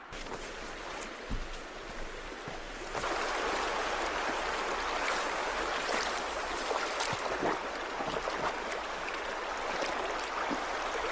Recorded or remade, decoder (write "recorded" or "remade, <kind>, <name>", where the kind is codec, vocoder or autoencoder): recorded